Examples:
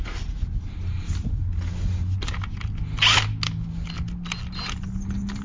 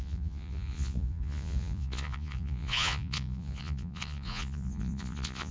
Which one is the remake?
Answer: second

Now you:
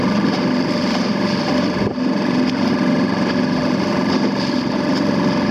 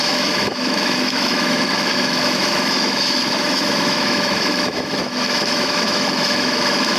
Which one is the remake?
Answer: second